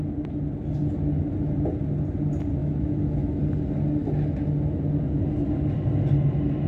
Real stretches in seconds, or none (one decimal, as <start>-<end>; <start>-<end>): 0.0-2.6; 3.4-6.7